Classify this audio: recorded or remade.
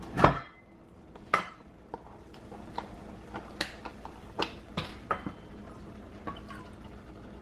recorded